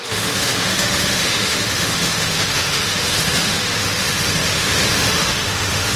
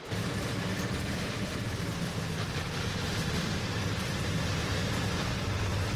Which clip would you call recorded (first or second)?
second